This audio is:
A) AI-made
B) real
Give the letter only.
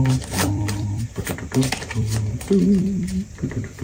A